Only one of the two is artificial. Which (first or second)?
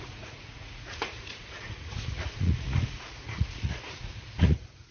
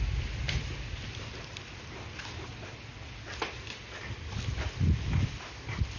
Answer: first